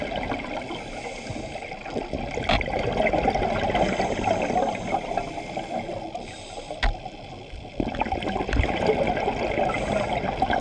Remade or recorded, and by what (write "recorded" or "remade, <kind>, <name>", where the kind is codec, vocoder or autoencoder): recorded